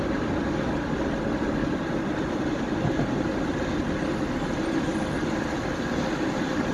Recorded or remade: recorded